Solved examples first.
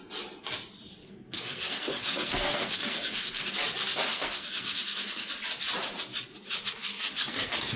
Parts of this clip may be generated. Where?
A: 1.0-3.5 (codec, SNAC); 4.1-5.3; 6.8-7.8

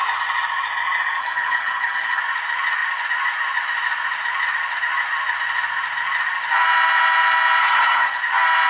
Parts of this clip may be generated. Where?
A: 1.2-2.2 (codec, HILCodec); 7.6-8.2

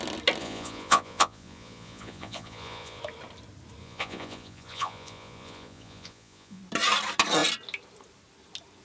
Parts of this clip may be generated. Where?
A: 0.4-3.0 (vocoder, Vocos); 3.8-6.6

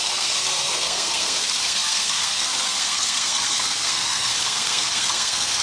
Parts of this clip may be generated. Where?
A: 0.0-5.6 (codec, SNAC)

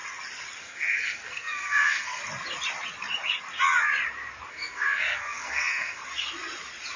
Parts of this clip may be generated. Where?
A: 0.6-2.2 (codec, SNAC); 4.5-6.0

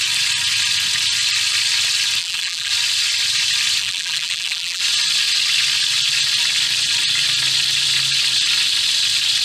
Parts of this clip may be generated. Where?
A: 2.2-2.7 (vocoder, BigVGAN v2); 3.8-4.8